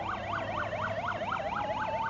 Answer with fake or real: real